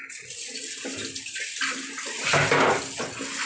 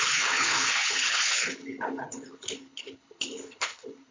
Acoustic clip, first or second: first